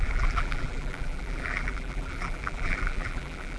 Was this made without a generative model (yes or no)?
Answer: no